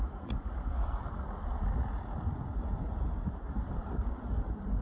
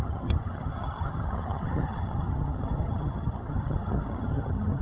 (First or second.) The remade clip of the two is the second